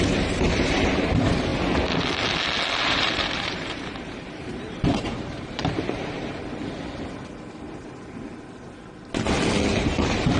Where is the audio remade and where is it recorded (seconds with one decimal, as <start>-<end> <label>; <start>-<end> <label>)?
0.0-1.5 remade; 1.5-2.8 recorded; 2.8-6.6 remade; 6.6-10.4 recorded